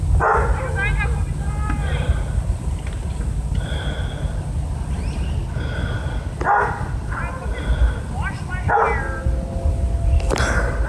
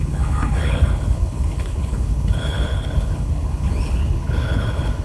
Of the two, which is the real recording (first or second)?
first